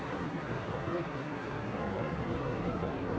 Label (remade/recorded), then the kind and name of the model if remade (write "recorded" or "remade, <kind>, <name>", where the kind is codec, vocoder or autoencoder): remade, codec, SNAC